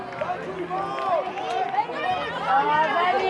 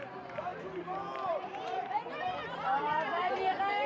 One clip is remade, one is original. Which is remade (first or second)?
second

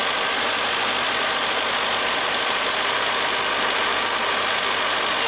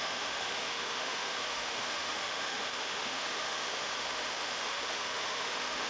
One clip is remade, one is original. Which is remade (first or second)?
second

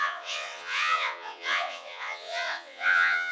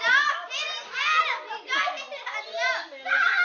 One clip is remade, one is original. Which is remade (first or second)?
first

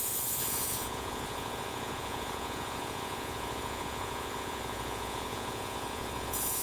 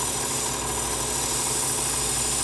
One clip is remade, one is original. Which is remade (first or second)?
first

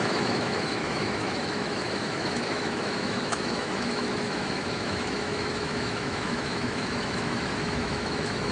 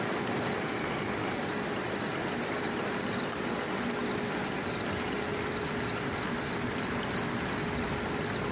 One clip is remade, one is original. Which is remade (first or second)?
first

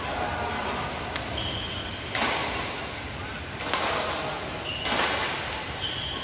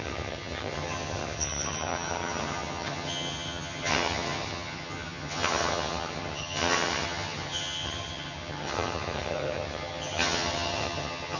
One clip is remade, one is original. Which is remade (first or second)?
second